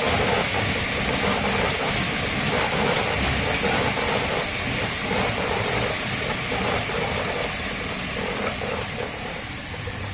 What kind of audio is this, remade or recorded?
remade